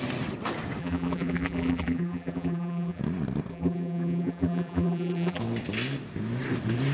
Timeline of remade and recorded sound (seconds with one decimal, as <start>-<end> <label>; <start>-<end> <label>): 0.0-0.8 recorded; 0.8-3.0 remade; 3.0-3.5 recorded; 3.5-5.4 remade; 5.4-6.9 recorded